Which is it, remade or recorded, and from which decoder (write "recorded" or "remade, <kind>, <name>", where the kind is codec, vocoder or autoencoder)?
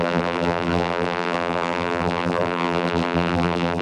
remade, vocoder, BigVGAN v2